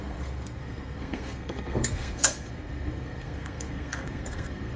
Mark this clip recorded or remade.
remade